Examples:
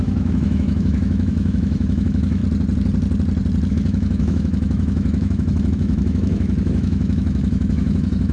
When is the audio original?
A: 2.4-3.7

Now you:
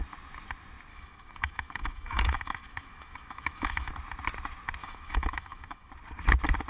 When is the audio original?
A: 0.0-0.9; 3.9-4.8; 5.9-6.7

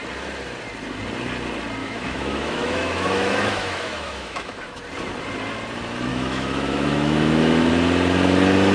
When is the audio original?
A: 0.0-1.8; 4.8-6.1; 7.7-8.7

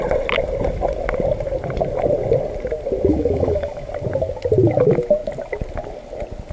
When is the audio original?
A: 0.0-3.1; 3.9-6.5

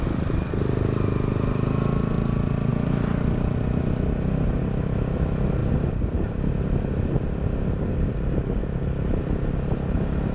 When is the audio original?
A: 0.0-10.3

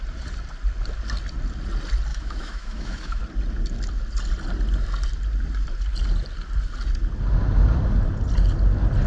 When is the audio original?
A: 0.0-2.1; 3.2-9.1

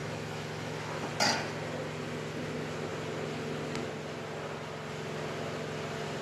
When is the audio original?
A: 1.1-6.2

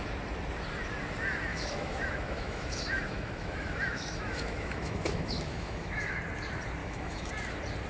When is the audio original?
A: 0.0-1.5; 6.2-6.8; 7.3-7.9